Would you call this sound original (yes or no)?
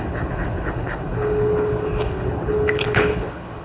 no